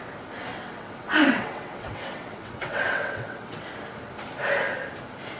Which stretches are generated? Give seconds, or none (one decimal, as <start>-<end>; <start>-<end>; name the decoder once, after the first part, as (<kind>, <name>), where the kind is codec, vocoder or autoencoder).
0.5-3.7 (vocoder, WaveNeXt)